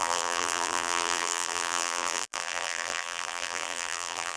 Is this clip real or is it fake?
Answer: fake